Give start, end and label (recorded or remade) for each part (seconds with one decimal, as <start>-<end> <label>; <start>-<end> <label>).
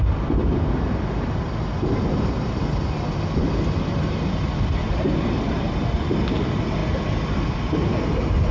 0.0-8.5 recorded